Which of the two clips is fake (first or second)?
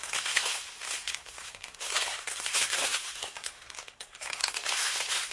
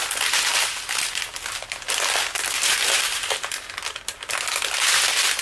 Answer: first